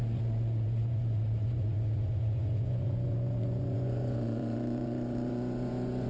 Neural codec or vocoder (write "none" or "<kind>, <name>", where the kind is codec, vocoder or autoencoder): vocoder, Vocos